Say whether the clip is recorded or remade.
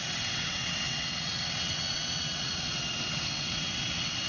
remade